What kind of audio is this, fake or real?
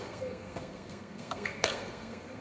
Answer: fake